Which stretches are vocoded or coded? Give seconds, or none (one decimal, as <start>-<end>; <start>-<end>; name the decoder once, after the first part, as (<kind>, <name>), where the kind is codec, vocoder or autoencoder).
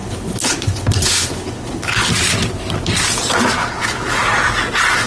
0.0-2.1 (codec, HILCodec); 3.6-4.1